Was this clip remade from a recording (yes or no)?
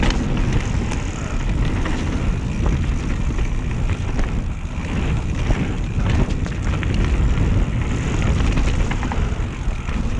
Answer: no